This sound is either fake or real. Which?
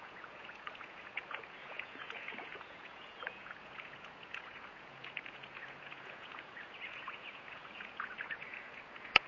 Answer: fake